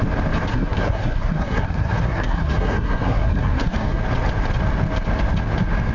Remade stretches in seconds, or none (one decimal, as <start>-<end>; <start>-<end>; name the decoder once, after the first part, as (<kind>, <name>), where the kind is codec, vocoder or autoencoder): 0.5-4.0 (codec, SNAC)